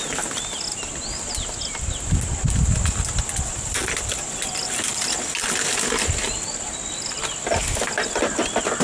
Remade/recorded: recorded